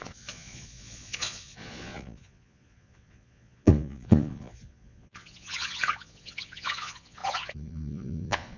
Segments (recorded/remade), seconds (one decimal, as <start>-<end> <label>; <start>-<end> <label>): 0.0-8.6 remade